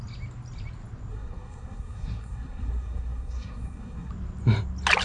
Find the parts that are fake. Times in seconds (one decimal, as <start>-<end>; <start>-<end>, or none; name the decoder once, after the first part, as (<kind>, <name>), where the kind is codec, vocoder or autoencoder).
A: 1.1-4.1 (codec, SNAC)